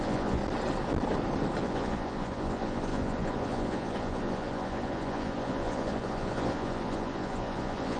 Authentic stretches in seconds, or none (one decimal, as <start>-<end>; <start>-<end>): 0.4-1.6